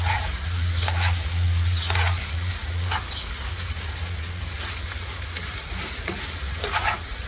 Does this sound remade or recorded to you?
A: remade